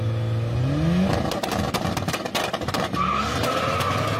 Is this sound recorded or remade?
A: recorded